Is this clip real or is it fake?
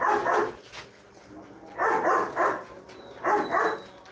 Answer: real